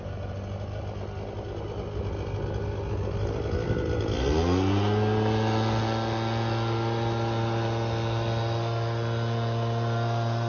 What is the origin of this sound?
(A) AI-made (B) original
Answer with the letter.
B